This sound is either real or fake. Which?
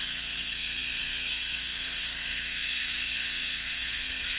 fake